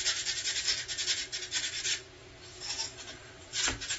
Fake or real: real